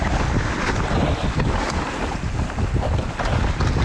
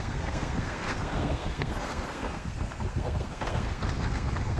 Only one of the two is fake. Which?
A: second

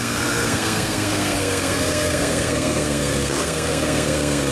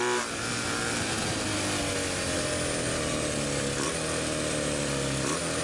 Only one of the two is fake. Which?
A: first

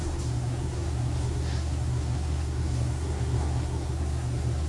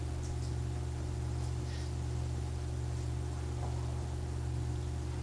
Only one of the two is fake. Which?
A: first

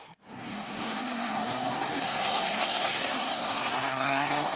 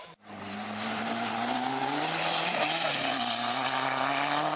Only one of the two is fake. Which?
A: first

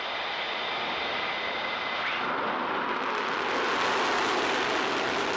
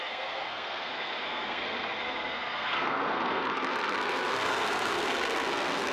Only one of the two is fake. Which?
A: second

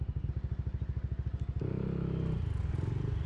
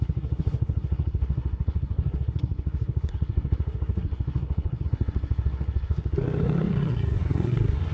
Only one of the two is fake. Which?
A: second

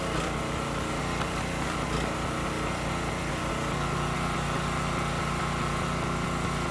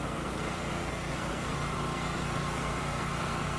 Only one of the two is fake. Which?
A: second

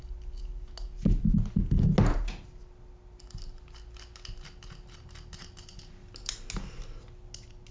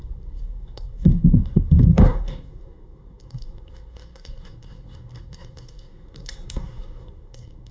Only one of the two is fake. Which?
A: second